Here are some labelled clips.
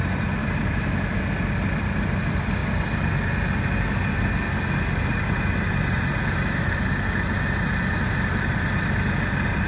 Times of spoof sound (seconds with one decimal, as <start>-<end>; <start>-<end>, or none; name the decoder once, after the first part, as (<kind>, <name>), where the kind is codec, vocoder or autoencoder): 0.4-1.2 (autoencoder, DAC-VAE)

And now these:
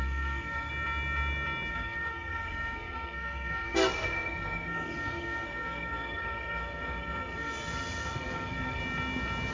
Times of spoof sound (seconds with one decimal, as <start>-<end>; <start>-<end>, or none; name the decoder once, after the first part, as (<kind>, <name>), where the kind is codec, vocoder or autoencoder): 0.0-0.7 (codec, SNAC); 1.7-8.8

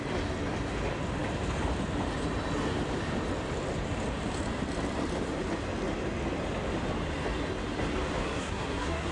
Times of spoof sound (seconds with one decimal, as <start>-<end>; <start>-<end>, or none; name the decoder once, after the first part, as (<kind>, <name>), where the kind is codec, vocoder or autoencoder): 8.2-9.1 (codec, SNAC)